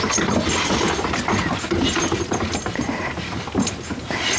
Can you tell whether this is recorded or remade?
recorded